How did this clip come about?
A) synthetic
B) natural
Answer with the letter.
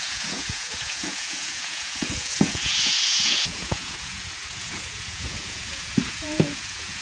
A